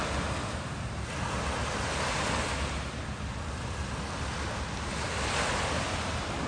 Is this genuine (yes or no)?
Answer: yes